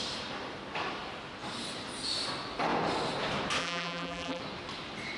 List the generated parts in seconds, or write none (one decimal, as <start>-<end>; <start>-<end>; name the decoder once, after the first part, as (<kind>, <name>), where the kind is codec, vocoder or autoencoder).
3.6-4.4 (vocoder, BigVGAN v2)